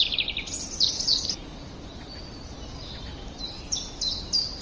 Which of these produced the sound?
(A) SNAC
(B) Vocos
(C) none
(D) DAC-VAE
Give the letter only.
C